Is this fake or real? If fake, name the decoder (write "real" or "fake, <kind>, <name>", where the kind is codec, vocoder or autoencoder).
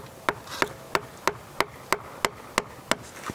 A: real